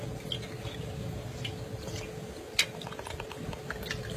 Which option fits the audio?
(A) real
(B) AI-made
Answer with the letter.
A